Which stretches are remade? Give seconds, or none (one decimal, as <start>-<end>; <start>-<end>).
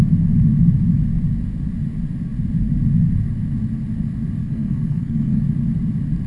4.4-5.4